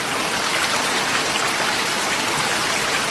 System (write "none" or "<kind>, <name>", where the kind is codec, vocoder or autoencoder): none